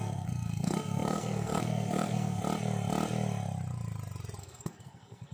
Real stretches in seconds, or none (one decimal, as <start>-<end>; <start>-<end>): 2.4-4.4